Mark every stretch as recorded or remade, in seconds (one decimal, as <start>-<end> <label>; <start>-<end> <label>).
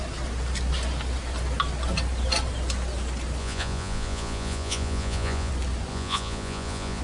0.0-3.4 recorded; 3.4-5.5 remade; 5.5-5.9 recorded; 5.9-7.0 remade